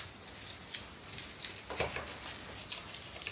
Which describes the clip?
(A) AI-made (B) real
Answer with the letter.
B